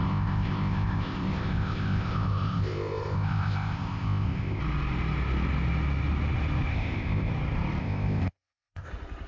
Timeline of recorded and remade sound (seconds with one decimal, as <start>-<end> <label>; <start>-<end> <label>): 0.0-4.6 remade; 4.6-6.7 recorded; 6.7-7.3 remade; 7.3-7.8 recorded; 7.8-8.9 remade; 8.9-9.3 recorded